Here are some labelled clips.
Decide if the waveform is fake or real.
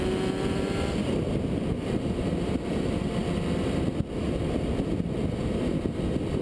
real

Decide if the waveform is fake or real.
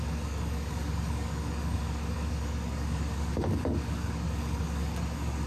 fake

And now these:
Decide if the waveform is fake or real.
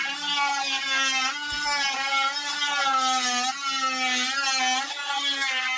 real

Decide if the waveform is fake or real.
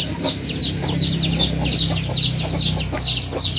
real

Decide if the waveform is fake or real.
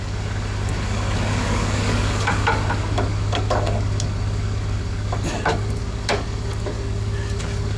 fake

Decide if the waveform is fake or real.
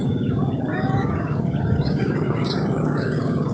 fake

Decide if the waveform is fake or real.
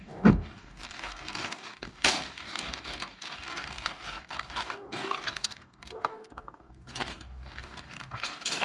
fake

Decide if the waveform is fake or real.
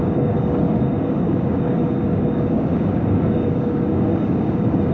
fake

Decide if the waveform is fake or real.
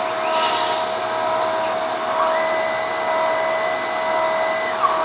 real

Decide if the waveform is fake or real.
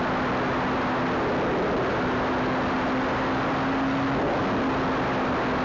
real